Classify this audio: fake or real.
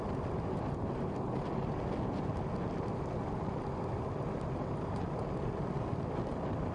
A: real